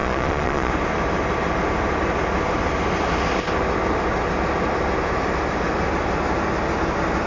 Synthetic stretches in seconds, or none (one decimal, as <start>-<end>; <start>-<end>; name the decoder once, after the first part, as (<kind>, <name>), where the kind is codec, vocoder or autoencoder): 0.0-0.7 (vocoder, Vocos)